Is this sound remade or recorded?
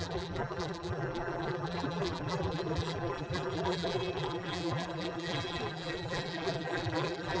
remade